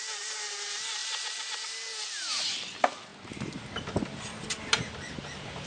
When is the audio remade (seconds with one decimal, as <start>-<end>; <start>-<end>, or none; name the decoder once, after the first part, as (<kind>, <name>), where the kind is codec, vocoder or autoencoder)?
none